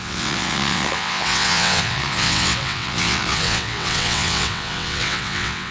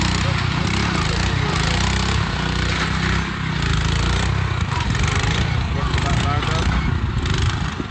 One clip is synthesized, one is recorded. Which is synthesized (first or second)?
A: first